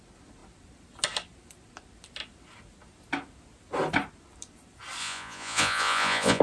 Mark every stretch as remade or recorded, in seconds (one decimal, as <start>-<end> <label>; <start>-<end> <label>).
0.0-5.0 recorded; 5.0-6.4 remade